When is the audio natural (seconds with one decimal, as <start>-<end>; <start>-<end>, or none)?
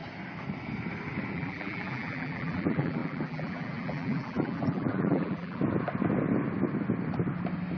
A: 0.0-1.3; 5.6-7.8